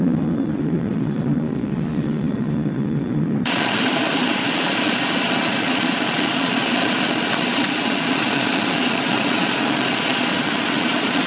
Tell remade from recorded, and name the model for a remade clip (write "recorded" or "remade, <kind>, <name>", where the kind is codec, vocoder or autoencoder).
remade, vocoder, Vocos